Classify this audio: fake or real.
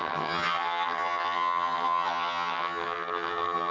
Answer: fake